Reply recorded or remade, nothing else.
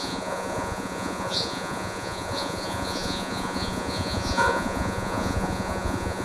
remade